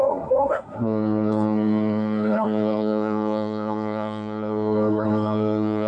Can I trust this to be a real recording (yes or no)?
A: no